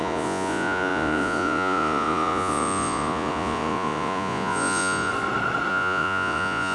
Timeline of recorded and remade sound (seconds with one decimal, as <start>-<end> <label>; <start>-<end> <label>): 0.0-5.1 remade; 5.1-5.7 recorded; 5.7-6.7 remade